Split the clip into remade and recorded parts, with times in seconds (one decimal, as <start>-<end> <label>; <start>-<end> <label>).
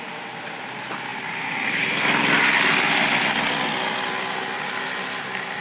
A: 0.0-5.6 recorded